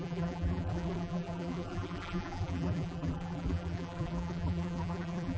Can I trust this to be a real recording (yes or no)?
no